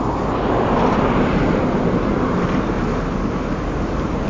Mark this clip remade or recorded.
recorded